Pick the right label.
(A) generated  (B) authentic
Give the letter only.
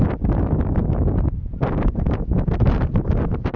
B